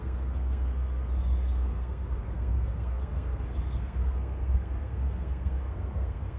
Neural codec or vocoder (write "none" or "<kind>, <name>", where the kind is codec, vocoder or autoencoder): codec, SNAC